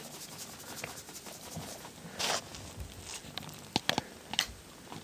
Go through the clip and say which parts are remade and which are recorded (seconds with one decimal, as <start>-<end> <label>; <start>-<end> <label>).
0.0-5.0 recorded